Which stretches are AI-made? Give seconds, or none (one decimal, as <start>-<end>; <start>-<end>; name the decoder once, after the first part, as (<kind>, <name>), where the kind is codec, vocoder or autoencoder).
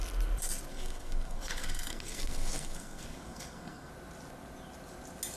0.7-3.9 (codec, SNAC)